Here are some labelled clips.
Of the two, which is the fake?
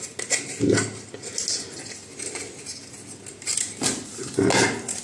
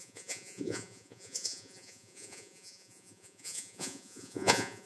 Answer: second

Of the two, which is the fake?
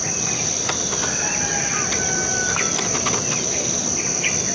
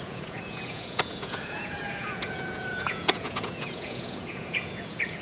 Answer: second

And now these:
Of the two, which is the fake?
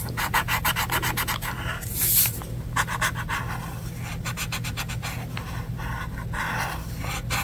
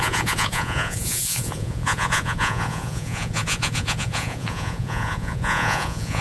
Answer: second